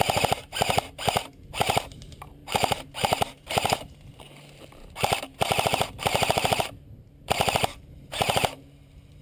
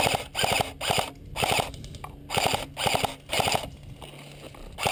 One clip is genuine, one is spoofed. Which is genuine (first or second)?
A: second